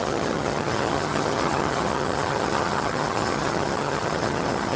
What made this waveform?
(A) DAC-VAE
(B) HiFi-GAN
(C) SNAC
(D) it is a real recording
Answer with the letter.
B